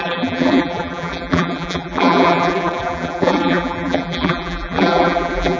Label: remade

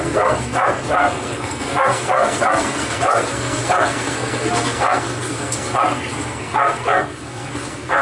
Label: remade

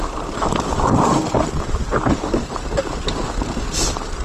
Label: recorded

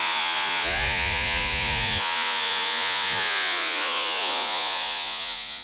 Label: remade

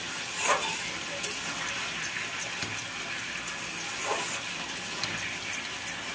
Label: recorded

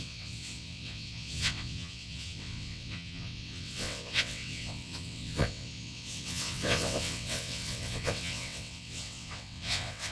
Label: remade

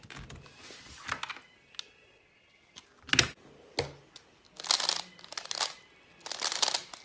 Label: recorded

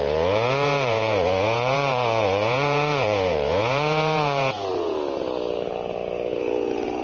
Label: remade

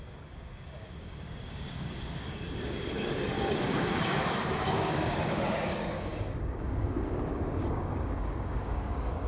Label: remade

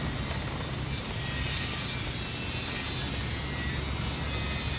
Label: recorded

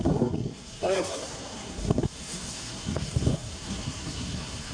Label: remade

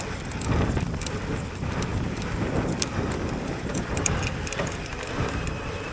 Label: recorded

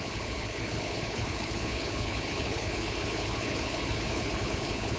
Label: remade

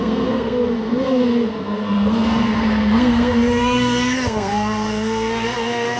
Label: remade